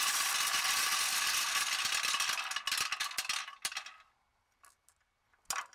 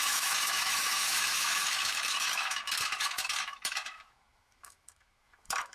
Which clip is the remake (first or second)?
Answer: second